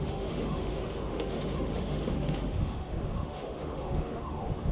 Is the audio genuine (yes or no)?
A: no